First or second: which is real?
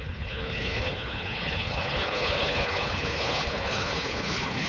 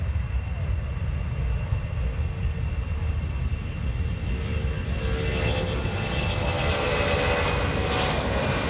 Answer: second